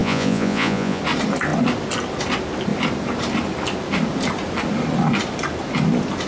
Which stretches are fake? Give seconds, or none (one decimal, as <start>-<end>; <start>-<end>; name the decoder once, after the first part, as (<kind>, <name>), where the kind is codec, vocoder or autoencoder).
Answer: 0.0-1.0 (vocoder, Vocos)